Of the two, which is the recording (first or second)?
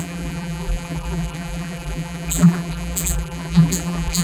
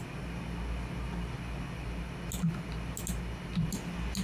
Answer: second